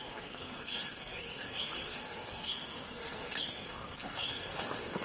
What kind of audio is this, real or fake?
fake